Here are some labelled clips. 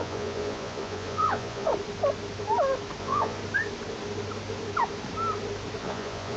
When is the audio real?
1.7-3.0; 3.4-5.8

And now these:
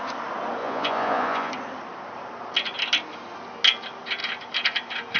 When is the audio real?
0.0-0.6; 1.5-5.2

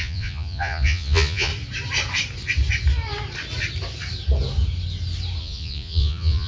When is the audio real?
1.5-5.4

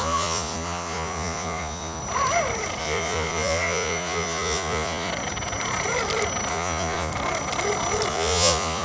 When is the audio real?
2.0-2.8; 5.1-6.5; 7.1-8.1